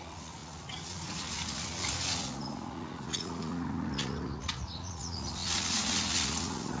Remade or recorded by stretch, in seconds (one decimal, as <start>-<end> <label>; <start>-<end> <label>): 0.0-6.8 remade